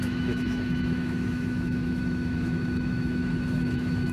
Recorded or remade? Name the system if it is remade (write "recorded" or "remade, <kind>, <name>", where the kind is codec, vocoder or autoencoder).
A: remade, autoencoder, DAC-VAE